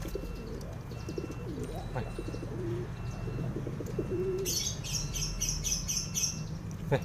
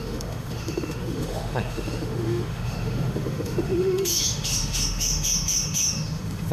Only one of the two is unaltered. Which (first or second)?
first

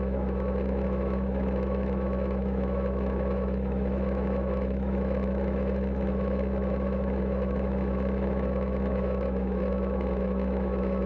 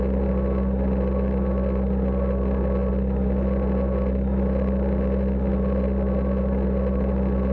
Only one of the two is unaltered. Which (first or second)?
second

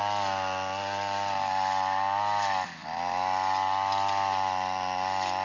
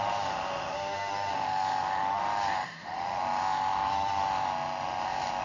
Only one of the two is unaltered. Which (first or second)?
first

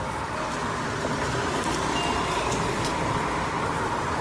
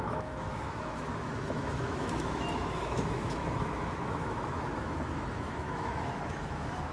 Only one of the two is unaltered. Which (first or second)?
first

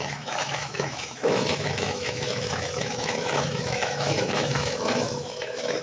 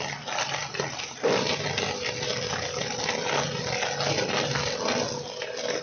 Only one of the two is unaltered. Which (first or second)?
second